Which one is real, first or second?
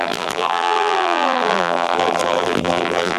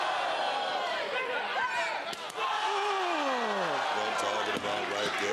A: second